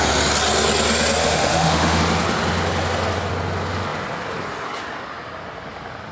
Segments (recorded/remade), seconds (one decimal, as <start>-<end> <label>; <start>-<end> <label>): 0.0-1.2 recorded; 1.2-2.0 remade; 2.0-6.1 recorded